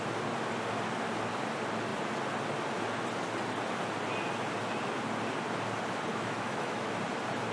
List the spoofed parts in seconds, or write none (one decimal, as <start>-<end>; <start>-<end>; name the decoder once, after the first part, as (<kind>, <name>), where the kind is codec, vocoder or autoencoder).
6.1-6.9 (autoencoder, DAC-VAE)